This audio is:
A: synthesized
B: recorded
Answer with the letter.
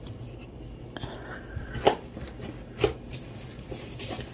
B